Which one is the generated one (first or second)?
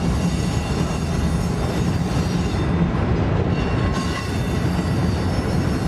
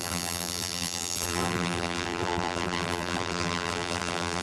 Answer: second